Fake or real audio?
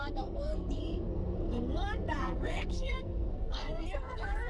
fake